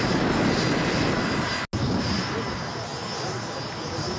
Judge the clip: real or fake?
real